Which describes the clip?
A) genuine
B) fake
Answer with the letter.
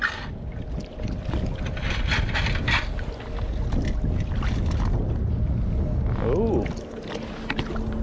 A